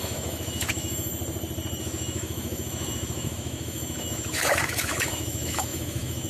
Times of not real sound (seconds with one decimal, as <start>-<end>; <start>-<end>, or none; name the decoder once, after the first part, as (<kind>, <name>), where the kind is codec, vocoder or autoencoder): 0.0-1.1 (autoencoder, DAC-VAE); 1.8-6.3